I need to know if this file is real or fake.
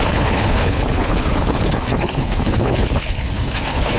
fake